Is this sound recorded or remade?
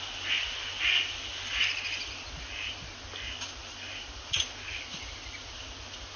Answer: recorded